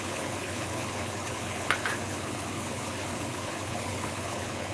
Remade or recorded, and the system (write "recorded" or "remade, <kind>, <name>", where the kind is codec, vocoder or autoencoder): remade, codec, HILCodec